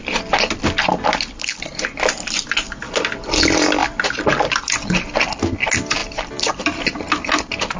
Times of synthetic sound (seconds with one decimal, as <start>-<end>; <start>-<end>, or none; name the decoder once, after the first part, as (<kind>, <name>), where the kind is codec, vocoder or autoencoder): 3.8-4.4 (vocoder, BigVGAN v2); 6.0-7.0